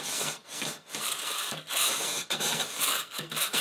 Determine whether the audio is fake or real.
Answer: fake